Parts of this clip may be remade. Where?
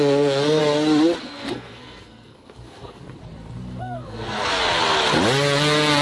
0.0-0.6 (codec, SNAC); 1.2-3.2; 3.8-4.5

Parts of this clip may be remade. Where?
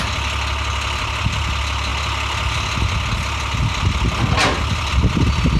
none